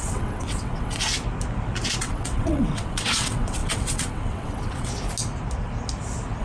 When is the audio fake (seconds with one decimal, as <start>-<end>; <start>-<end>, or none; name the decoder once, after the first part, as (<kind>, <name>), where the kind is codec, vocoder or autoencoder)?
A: 0.0-1.0 (vocoder, WaveNeXt); 2.0-4.9